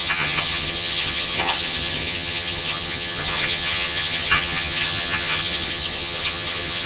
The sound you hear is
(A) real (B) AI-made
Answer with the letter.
B